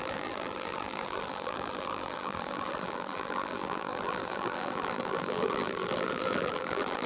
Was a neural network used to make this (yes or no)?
yes